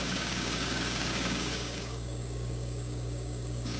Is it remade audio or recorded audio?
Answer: remade